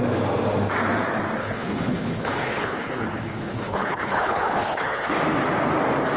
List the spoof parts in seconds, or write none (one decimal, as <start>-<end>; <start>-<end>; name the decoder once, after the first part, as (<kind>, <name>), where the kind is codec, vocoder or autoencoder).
1.4-5.1 (codec, HILCodec)